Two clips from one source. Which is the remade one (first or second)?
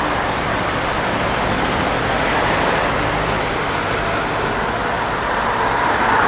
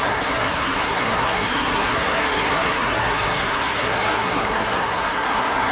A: second